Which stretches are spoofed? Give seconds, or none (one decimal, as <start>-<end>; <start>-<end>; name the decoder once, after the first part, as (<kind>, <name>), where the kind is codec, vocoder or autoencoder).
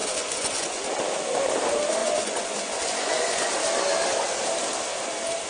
0.0-0.8 (vocoder, Vocos); 2.0-3.5